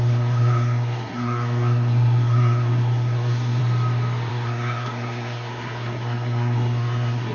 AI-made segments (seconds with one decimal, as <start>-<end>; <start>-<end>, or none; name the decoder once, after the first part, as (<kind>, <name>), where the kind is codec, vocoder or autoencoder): 0.0-3.6 (codec, SNAC); 4.3-7.3